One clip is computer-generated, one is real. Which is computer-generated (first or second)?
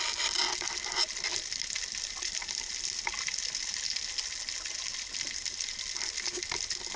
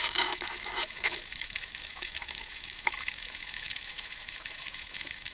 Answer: second